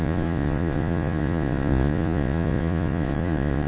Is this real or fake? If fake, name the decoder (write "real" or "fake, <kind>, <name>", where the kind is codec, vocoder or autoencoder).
fake, vocoder, Vocos